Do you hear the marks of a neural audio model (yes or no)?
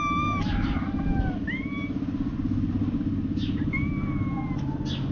no